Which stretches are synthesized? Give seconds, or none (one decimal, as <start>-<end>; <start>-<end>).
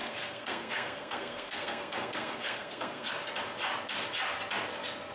0.0-3.1